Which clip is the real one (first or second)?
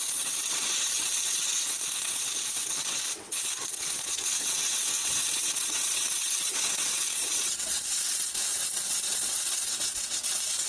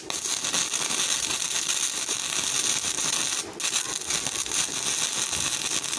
second